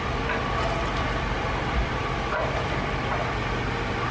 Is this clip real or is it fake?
real